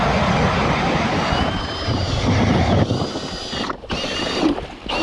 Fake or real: real